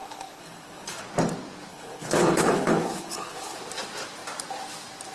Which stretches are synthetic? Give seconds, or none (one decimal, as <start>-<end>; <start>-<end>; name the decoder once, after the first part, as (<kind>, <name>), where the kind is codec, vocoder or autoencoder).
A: 0.0-1.0 (codec, HILCodec); 1.7-3.6